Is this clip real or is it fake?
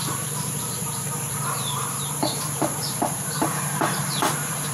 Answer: fake